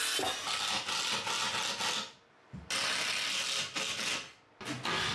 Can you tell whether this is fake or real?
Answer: real